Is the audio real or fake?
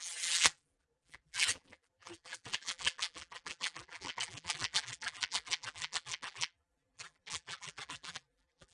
fake